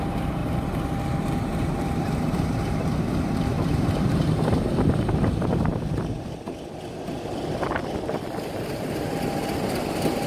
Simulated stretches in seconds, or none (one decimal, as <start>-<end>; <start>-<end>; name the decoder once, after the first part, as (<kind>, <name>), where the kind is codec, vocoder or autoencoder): 0.4-3.0 (vocoder, BigVGAN v2); 3.5-6.1